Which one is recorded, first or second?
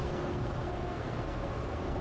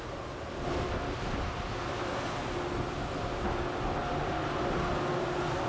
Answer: second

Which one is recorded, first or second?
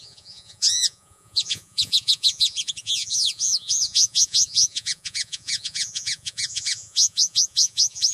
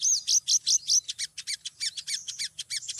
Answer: second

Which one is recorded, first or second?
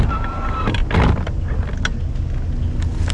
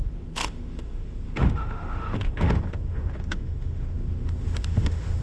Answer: first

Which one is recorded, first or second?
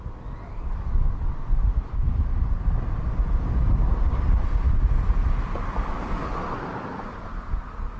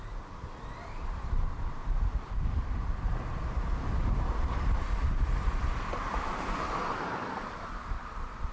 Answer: first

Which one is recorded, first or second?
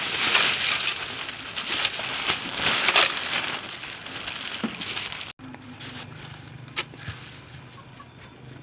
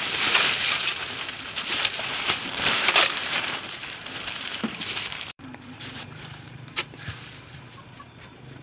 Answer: first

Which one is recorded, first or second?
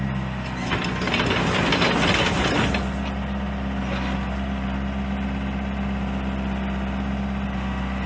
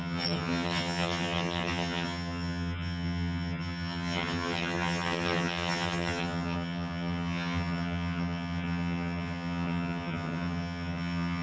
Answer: first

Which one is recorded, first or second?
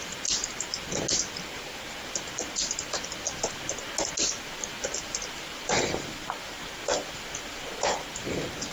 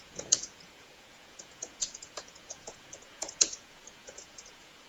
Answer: first